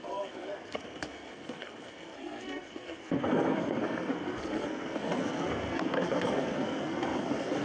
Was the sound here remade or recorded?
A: remade